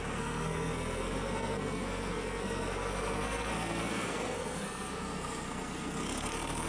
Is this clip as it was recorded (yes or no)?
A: no